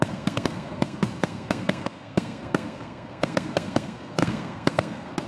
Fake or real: fake